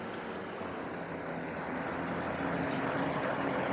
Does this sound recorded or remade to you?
recorded